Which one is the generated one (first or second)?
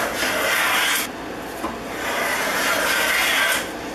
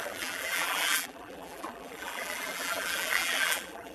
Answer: second